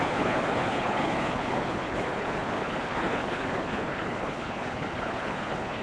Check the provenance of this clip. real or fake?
fake